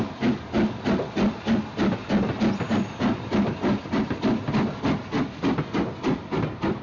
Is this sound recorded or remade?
recorded